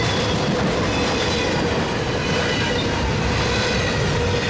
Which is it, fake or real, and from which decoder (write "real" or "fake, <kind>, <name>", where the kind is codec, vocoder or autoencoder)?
real